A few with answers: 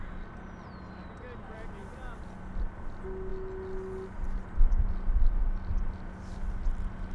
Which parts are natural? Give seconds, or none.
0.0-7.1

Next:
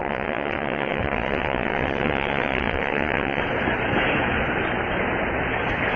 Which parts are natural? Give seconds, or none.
3.4-6.0

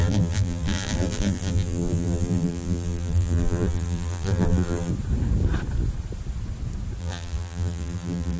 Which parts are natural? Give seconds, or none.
4.9-7.0